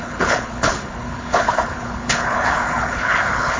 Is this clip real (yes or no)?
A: no